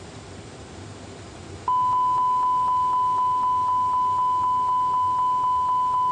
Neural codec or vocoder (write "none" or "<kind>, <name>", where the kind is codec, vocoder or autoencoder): none